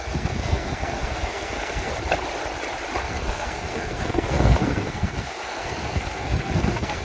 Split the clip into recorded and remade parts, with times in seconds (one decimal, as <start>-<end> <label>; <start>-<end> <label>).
0.0-1.9 remade; 1.9-3.0 recorded; 3.0-7.0 remade